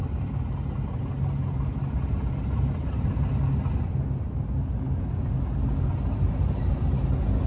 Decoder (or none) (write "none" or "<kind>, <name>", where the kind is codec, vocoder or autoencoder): none